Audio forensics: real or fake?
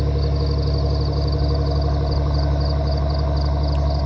real